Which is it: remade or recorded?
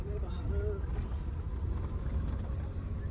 recorded